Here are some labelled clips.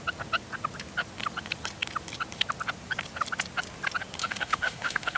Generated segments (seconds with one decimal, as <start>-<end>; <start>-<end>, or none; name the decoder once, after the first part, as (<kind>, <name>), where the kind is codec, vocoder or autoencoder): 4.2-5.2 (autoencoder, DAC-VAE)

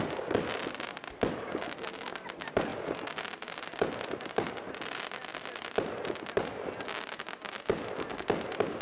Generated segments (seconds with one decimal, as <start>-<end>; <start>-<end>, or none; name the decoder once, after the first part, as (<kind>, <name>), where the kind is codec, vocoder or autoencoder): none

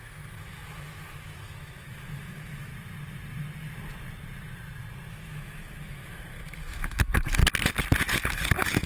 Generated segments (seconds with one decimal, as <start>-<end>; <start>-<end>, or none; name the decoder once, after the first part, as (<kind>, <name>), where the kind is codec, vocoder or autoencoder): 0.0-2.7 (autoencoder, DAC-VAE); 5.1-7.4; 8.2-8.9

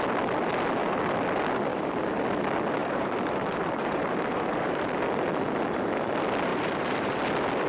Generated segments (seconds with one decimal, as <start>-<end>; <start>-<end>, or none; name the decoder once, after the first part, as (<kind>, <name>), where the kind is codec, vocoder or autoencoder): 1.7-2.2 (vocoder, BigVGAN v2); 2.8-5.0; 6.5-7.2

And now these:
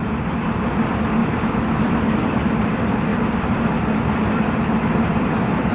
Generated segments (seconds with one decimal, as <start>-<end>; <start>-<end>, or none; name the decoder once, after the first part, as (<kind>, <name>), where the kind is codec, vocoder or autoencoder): none

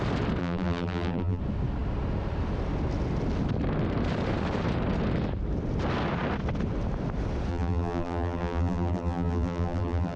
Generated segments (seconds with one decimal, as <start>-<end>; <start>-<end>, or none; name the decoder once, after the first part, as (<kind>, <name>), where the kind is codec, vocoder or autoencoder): 0.4-1.4 (vocoder, BigVGAN v2); 7.5-10.2

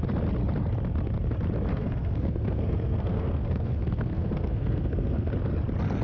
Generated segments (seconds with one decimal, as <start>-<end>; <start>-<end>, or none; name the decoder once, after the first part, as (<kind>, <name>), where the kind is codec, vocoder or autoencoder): 1.7-5.3 (codec, SNAC)